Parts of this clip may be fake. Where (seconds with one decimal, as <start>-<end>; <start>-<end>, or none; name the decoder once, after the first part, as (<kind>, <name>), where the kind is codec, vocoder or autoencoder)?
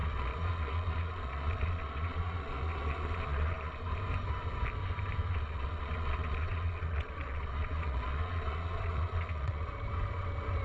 0.0-3.9 (vocoder, Vocos); 5.3-9.7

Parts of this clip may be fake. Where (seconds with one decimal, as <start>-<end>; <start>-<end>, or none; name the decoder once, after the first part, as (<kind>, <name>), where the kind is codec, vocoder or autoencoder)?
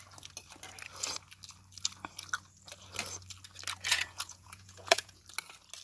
3.9-5.2 (vocoder, Vocos)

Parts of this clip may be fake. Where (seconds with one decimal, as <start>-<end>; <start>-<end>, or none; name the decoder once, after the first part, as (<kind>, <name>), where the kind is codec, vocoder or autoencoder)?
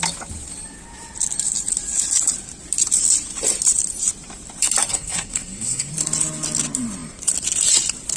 4.9-5.9 (codec, SNAC)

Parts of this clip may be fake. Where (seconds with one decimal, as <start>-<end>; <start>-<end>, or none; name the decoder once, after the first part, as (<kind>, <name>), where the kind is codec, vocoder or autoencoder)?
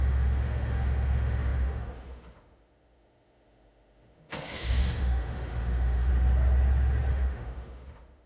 0.0-6.1 (autoencoder, DAC-VAE); 7.1-8.3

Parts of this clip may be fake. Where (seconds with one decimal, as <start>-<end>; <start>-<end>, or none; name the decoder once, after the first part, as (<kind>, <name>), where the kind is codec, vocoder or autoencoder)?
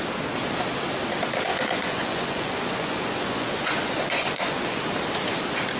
1.5-4.8 (vocoder, Vocos)